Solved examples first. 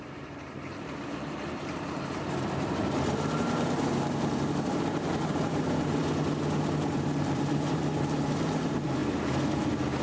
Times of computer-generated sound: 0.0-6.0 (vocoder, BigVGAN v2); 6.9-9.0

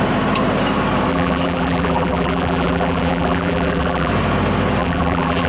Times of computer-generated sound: 1.1-4.1 (vocoder, BigVGAN v2); 4.8-5.5

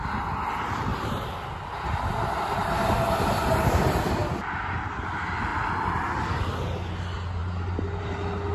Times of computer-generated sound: 5.5-6.4 (vocoder, BigVGAN v2)

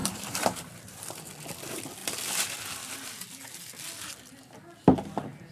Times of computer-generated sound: 0.0-1.0 (vocoder, BigVGAN v2)